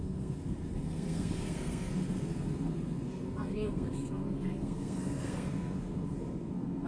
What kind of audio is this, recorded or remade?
remade